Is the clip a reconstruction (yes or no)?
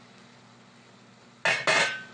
no